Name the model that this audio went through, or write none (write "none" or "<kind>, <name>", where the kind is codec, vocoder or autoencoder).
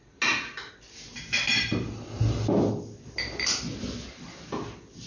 none